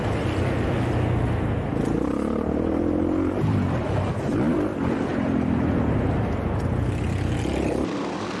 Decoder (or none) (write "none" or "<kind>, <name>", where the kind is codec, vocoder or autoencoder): none